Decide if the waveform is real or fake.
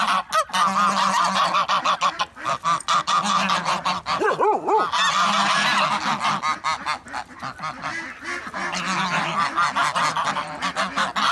real